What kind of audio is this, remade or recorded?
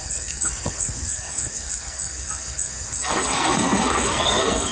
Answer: remade